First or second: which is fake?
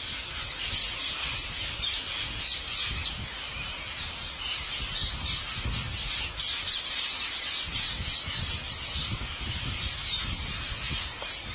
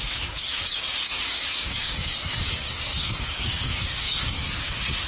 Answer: second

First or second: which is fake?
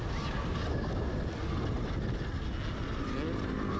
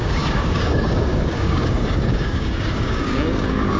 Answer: second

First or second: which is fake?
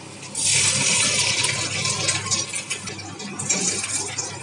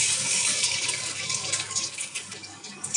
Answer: second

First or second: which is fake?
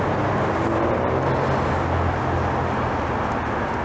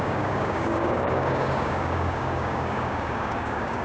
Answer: second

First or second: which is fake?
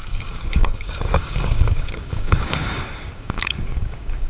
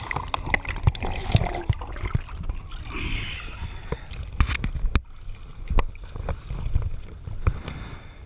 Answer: first